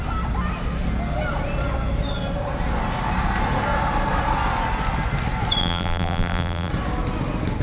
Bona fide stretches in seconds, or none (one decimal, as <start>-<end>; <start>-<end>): 0.0-5.6; 6.7-7.6